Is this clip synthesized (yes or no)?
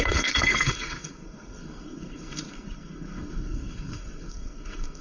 yes